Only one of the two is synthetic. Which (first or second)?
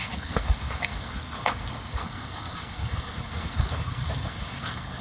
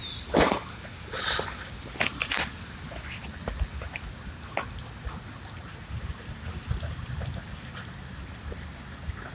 first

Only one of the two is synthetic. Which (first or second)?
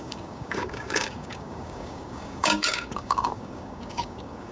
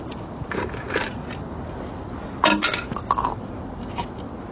first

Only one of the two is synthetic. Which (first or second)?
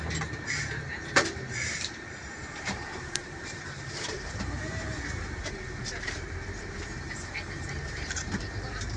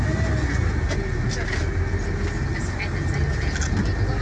first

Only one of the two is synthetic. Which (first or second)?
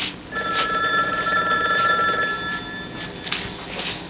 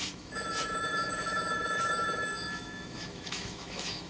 second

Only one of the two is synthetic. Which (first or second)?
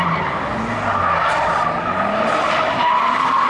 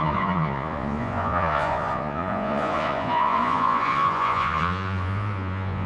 second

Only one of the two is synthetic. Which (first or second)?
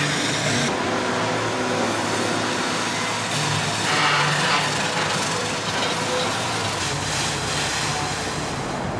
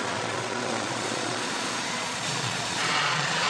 second